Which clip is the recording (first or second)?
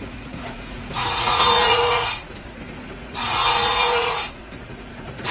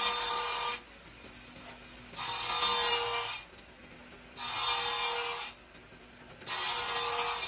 second